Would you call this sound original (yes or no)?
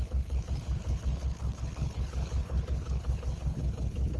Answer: no